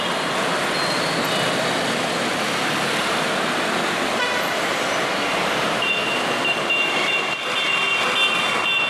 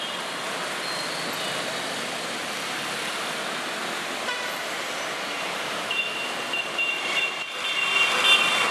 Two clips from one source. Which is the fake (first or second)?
second